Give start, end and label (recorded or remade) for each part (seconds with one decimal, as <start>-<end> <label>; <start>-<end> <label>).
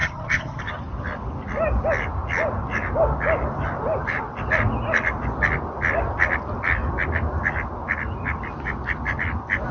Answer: 0.0-0.6 remade; 0.6-9.7 recorded